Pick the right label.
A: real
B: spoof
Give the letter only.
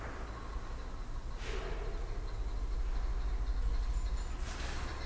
A